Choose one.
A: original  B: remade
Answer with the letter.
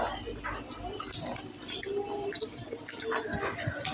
A